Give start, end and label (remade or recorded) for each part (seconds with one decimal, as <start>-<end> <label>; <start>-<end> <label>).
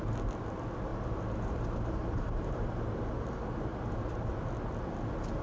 0.0-0.9 recorded; 0.9-2.6 remade; 2.6-3.7 recorded; 3.7-4.3 remade; 4.3-5.4 recorded